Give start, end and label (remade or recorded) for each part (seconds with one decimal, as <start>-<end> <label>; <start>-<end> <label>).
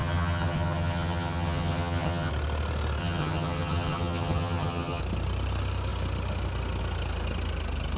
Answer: 0.0-2.3 remade; 2.3-3.0 recorded; 3.0-5.0 remade; 5.0-8.0 recorded